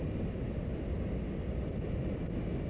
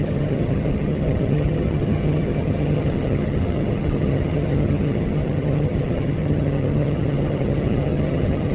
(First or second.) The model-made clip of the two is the second